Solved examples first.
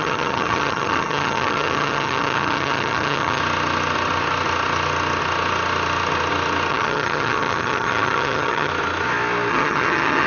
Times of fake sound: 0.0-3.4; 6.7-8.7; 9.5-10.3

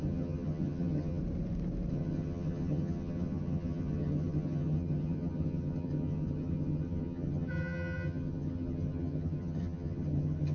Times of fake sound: 0.0-1.2; 1.9-10.5

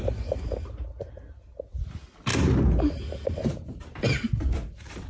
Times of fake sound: none

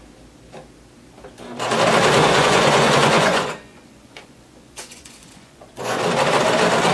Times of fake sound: 2.2-6.0

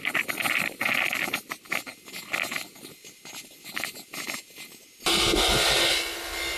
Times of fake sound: none